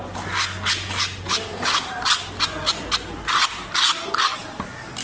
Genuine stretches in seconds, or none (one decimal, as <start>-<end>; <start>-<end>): 0.0-5.0